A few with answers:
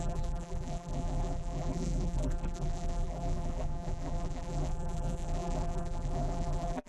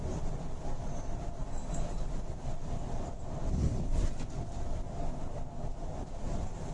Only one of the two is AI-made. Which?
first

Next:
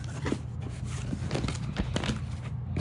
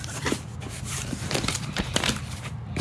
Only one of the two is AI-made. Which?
second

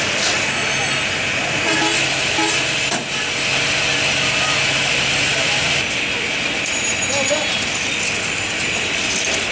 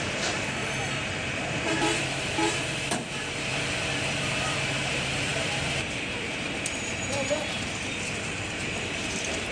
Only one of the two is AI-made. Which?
second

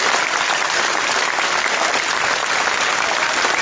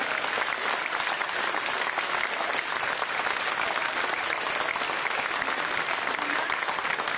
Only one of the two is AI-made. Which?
first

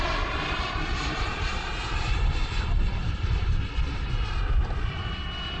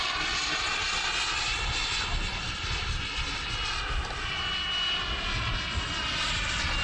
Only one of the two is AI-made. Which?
first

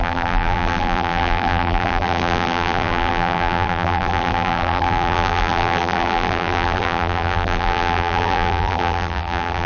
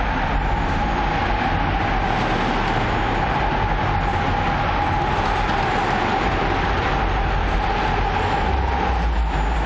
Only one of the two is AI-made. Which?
first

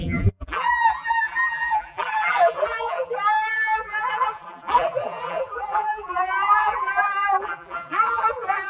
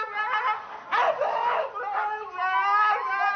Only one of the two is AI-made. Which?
first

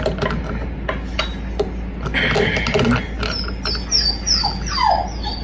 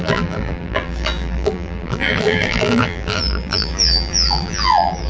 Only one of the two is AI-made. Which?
second